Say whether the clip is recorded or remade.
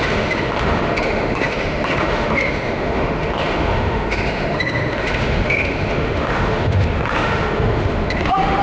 remade